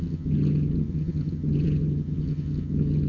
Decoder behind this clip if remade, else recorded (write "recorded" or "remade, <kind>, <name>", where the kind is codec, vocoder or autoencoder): remade, vocoder, HiFi-GAN